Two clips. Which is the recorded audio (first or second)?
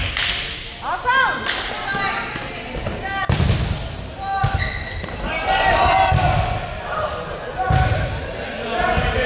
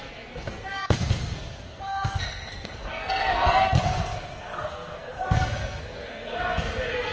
first